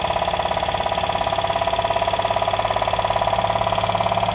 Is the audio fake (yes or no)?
no